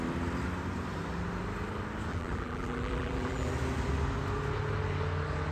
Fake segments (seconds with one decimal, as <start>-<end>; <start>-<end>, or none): 2.1-3.5